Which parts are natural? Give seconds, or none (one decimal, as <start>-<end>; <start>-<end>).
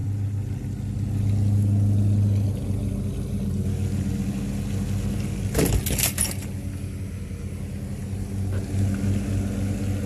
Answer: 0.0-10.1